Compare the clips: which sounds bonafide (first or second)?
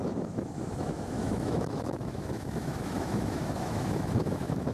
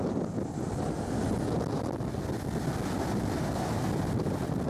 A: second